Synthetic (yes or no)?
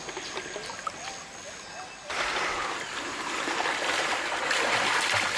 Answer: no